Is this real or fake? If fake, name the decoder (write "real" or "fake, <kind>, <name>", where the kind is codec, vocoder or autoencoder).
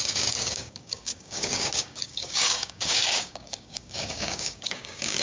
fake, codec, DAC